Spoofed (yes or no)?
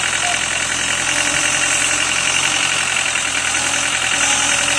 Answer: yes